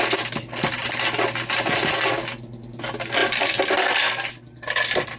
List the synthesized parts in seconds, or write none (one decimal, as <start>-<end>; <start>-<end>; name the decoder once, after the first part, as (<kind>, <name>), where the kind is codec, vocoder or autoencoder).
none